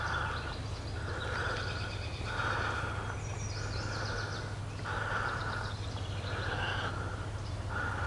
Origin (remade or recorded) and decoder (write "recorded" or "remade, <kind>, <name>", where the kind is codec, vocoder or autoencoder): recorded